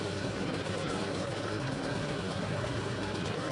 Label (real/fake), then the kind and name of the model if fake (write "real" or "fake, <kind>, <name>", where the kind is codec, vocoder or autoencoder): fake, codec, SNAC